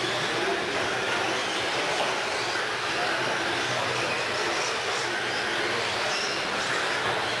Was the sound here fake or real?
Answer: real